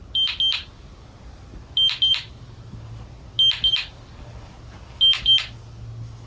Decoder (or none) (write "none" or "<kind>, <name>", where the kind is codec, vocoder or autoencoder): none